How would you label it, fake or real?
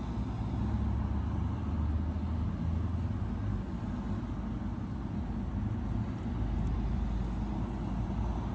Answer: real